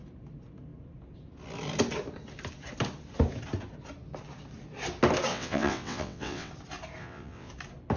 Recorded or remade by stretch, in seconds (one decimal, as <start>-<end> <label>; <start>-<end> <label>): 0.0-5.3 recorded; 5.3-6.5 remade; 6.5-7.0 recorded; 7.0-7.5 remade; 7.5-8.0 recorded